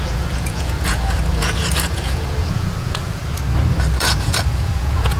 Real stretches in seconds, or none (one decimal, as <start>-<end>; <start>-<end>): 3.2-4.0